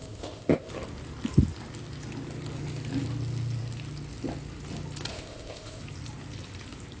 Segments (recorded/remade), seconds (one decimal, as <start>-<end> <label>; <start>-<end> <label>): 0.0-0.7 remade; 0.7-5.1 recorded; 5.1-5.8 remade; 5.8-7.0 recorded